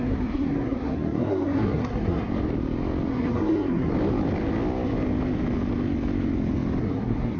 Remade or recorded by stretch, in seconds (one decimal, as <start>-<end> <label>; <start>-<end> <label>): 0.0-2.3 remade; 2.3-3.1 recorded; 3.1-3.9 remade; 3.9-6.8 recorded; 6.8-7.4 remade

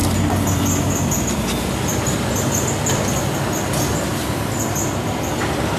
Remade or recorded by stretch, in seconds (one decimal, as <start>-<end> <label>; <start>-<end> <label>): 0.0-4.1 recorded; 4.1-5.3 remade; 5.3-5.8 recorded